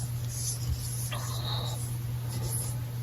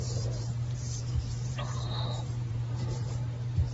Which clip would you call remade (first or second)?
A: second